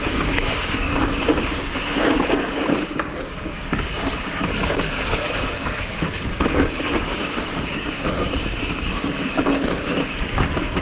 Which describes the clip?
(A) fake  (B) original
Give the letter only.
A